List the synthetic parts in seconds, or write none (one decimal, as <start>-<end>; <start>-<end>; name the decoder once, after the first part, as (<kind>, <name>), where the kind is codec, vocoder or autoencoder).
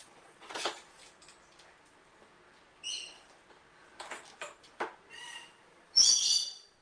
0.0-1.0 (vocoder, Vocos); 5.1-6.8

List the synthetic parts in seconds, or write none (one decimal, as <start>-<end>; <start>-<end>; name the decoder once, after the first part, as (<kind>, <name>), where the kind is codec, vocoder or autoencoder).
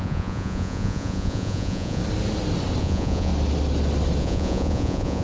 0.0-2.0 (vocoder, Vocos); 2.8-3.3; 4.2-5.2